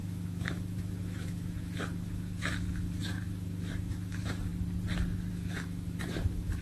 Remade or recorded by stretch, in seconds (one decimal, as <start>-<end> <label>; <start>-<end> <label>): 0.0-4.5 remade; 4.5-5.3 recorded; 5.3-6.6 remade